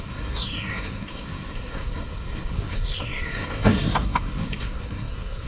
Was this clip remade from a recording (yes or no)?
yes